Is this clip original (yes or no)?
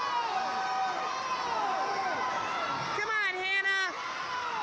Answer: yes